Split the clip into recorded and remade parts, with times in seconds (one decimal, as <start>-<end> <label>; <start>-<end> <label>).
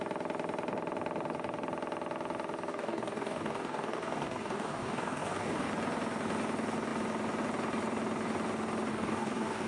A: 0.0-2.7 recorded; 2.7-5.7 remade; 5.7-8.9 recorded; 8.9-9.7 remade